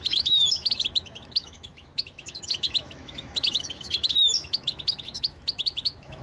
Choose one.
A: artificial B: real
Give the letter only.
A